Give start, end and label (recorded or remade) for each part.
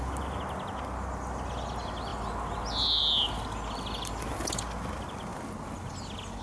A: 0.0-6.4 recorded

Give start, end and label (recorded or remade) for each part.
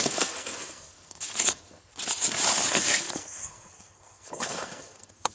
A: 0.0-1.9 remade; 1.9-2.7 recorded; 2.7-5.3 remade